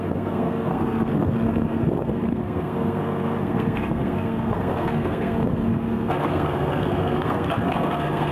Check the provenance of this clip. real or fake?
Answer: fake